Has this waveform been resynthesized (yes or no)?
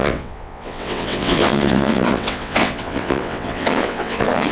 yes